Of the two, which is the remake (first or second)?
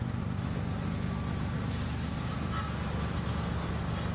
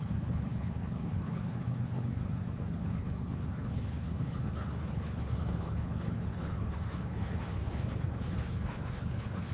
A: second